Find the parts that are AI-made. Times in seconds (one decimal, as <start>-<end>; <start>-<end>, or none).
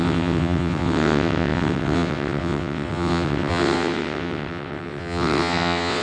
0.0-6.0